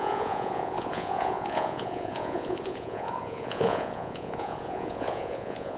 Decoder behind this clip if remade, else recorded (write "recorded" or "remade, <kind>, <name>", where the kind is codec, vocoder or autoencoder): remade, vocoder, Vocos